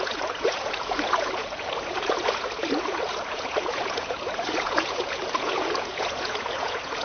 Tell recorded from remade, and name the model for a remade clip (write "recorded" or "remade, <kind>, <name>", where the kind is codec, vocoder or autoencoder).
remade, vocoder, Vocos